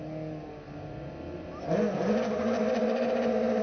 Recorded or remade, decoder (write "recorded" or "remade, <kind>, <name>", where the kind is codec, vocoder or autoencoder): recorded